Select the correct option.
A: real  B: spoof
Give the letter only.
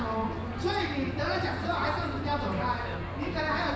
A